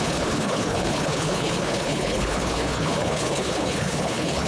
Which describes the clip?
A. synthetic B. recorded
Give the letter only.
A